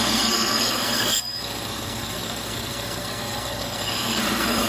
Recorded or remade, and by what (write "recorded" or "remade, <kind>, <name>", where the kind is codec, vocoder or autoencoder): remade, codec, SNAC